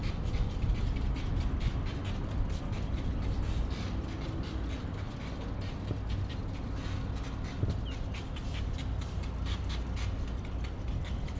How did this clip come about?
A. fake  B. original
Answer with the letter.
B